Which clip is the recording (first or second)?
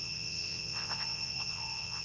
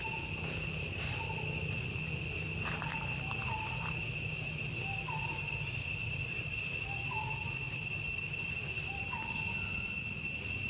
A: second